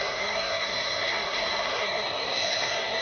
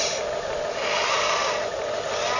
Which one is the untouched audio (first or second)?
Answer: second